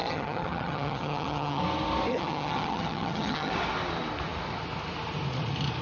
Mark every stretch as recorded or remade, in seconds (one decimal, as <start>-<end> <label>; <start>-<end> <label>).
0.0-1.6 remade; 1.6-2.1 recorded; 2.1-3.5 remade; 3.5-5.8 recorded